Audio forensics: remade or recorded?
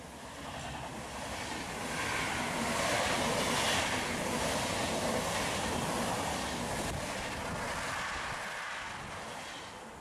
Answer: recorded